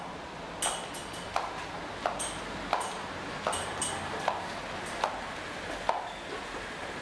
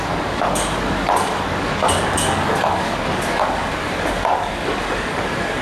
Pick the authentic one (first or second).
first